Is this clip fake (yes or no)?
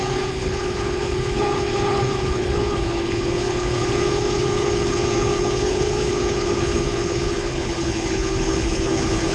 yes